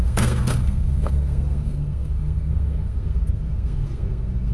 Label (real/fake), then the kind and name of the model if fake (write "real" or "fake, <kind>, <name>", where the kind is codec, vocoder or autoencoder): fake, codec, SNAC